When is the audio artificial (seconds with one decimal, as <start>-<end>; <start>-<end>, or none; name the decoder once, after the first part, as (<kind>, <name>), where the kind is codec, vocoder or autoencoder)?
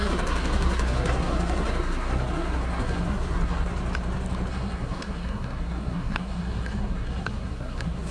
0.0-3.7 (codec, SNAC); 4.5-8.1